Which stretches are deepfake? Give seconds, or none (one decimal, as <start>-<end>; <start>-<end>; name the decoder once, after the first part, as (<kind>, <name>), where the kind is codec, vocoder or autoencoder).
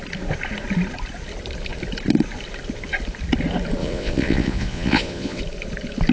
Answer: 3.8-5.4 (vocoder, Vocos)